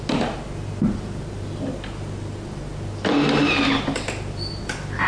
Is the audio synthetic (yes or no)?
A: no